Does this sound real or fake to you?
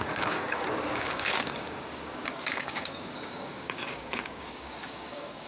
fake